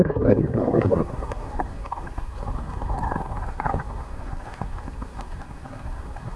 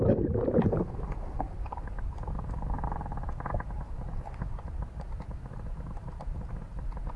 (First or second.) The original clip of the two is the second